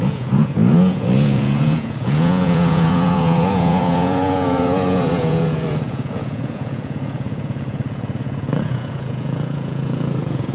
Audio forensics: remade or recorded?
remade